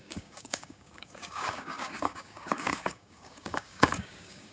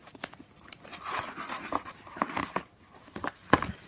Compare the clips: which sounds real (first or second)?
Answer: second